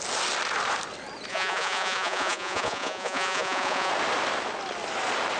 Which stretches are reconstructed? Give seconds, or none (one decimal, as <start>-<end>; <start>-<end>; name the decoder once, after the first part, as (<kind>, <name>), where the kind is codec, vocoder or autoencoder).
1.3-3.9 (vocoder, Vocos)